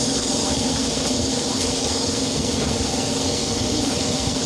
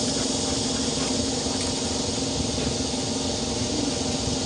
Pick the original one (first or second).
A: second